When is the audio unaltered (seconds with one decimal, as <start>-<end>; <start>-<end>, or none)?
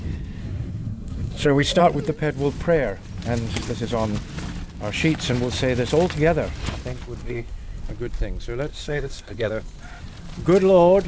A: 0.0-0.4; 1.8-7.2; 7.8-8.7; 9.5-11.1